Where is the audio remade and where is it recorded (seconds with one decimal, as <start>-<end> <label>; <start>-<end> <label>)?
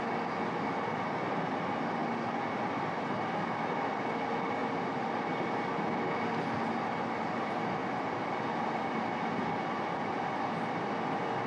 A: 0.0-11.5 recorded